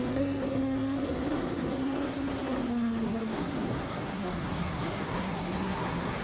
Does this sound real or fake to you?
fake